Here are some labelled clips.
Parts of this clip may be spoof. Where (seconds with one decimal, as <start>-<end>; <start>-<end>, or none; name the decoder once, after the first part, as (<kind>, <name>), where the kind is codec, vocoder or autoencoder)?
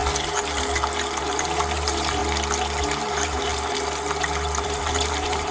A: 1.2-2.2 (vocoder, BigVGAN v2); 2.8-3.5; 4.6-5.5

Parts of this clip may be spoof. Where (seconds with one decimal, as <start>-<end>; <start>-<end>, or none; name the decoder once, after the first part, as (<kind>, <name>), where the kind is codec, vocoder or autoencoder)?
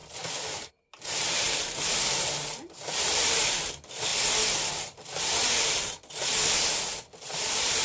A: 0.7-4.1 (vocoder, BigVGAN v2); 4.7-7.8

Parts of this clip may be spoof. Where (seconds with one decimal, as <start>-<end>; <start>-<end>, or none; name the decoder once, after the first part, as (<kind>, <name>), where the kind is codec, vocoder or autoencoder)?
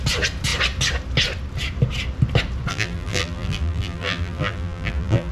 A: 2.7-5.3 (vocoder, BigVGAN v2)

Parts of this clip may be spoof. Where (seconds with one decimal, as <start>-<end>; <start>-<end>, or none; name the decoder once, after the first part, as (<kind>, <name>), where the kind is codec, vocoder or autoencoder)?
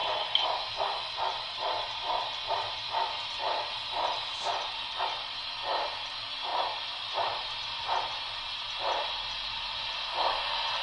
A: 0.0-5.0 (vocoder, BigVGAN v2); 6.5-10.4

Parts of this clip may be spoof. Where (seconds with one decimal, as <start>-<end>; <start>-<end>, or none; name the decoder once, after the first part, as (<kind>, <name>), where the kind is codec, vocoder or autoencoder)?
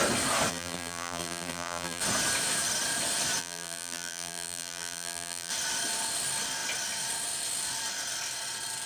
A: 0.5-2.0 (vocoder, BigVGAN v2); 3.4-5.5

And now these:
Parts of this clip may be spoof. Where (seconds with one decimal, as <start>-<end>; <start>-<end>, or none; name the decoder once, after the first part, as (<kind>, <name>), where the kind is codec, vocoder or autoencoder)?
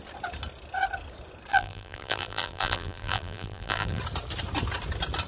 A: 1.5-4.0 (vocoder, BigVGAN v2)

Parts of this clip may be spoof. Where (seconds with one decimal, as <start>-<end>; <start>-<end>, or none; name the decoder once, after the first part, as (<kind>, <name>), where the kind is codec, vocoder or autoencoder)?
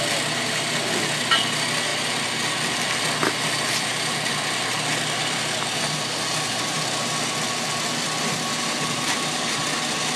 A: none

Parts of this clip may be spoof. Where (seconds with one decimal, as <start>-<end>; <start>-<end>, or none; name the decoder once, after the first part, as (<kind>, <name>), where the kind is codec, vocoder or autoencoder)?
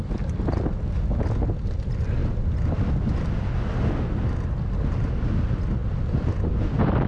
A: 2.2-3.7 (vocoder, BigVGAN v2); 5.8-6.5